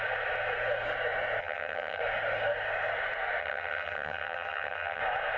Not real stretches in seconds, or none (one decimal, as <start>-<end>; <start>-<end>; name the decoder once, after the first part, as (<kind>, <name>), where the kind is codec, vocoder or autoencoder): 1.4-2.0 (vocoder, HiFi-GAN); 3.4-5.0